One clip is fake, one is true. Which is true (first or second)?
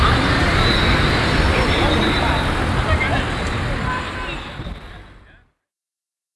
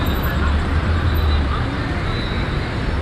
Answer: second